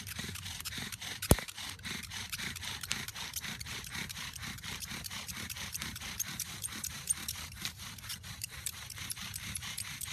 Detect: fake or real fake